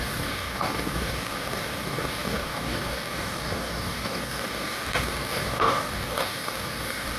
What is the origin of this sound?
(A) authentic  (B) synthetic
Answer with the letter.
B